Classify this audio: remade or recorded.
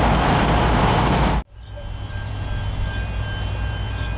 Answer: recorded